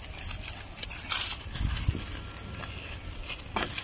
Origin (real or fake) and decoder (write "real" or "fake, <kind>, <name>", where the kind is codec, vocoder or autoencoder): real